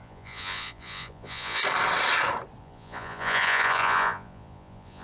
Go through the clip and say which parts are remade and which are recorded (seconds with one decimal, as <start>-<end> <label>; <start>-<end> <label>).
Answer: 0.0-1.6 remade; 1.6-2.6 recorded; 2.6-5.0 remade